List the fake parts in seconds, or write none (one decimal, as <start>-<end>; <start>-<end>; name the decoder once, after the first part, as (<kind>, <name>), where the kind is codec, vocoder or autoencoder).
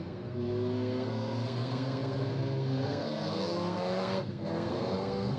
0.0-5.4 (codec, SNAC)